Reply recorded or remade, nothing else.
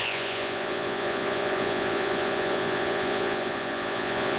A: remade